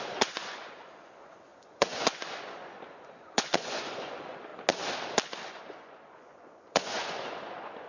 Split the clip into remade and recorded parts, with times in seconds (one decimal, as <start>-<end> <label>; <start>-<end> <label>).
0.0-4.5 remade; 4.5-5.5 recorded; 5.5-7.9 remade